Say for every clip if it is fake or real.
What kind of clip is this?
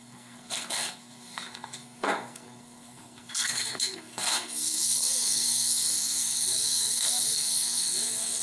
fake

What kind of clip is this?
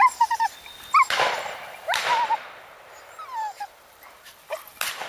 fake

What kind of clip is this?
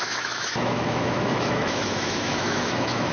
fake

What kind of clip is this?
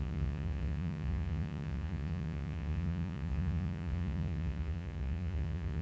fake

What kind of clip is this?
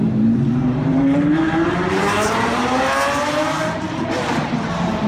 fake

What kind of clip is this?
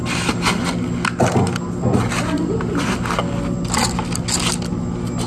real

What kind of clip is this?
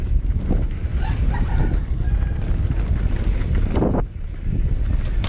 real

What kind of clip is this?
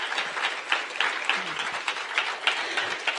real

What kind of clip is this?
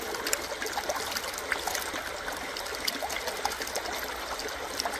real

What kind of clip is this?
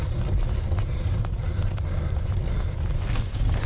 real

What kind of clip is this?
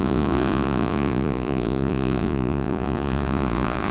fake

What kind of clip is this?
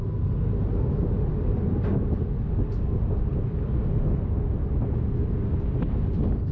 real